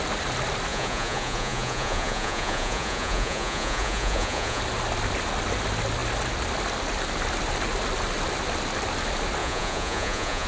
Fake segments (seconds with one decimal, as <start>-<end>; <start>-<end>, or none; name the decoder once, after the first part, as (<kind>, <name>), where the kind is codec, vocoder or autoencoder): 0.7-4.6 (vocoder, Vocos); 9.4-10.5